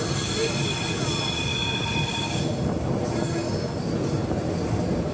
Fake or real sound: real